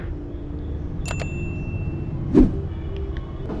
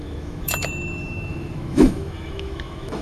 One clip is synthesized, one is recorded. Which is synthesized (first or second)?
second